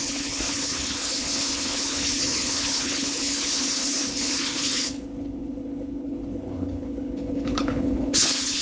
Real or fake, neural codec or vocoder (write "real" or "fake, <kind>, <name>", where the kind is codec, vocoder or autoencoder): fake, codec, HILCodec